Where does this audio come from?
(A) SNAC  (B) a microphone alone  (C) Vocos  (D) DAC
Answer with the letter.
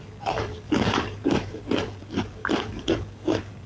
D